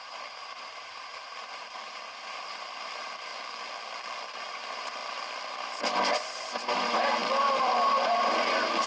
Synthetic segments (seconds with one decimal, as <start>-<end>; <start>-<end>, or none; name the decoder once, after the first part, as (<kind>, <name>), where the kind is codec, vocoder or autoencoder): 0.0-3.3 (vocoder, BigVGAN v2); 4.3-5.0; 5.5-8.9